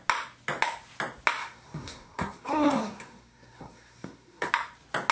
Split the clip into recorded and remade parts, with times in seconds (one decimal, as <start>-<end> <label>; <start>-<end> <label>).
0.0-1.4 recorded; 1.4-4.5 remade; 4.5-5.1 recorded